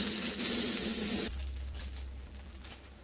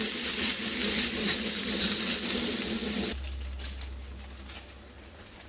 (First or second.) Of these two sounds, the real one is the second